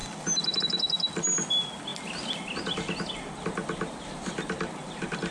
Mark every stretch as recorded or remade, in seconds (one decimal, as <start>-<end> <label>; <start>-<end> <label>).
0.0-5.3 recorded